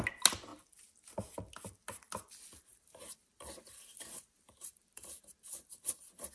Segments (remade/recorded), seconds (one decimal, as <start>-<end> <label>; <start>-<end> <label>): 0.0-2.7 recorded; 2.7-6.3 remade